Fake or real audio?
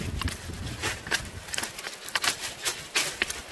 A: real